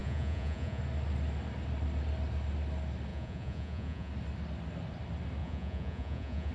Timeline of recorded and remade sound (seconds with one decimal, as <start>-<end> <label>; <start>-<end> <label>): 0.0-0.8 remade; 0.8-3.1 recorded; 3.1-4.1 remade; 4.1-5.4 recorded; 5.4-6.5 remade